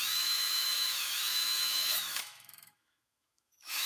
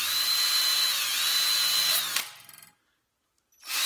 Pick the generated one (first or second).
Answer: first